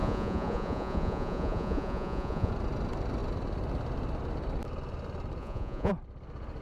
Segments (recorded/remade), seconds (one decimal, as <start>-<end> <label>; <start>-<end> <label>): 0.0-2.5 remade; 2.5-5.4 recorded; 5.4-5.9 remade; 5.9-6.6 recorded